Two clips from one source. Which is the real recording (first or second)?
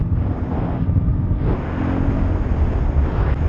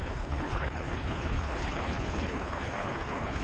first